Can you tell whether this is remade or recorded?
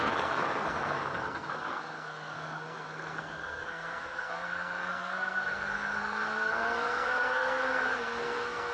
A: remade